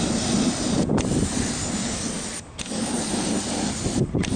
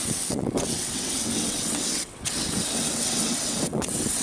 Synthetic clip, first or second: second